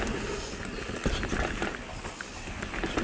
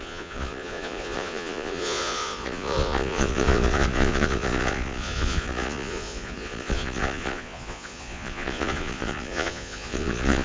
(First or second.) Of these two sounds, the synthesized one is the second